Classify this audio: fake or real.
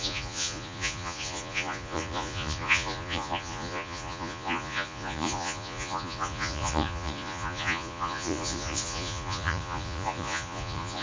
fake